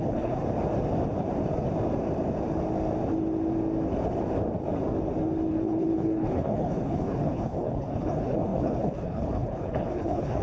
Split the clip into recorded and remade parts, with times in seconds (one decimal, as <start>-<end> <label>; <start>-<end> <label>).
0.0-0.4 remade; 0.4-5.5 recorded; 5.5-10.4 remade